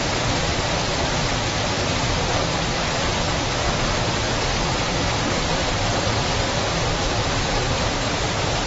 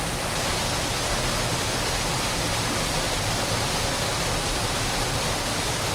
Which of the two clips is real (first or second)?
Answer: second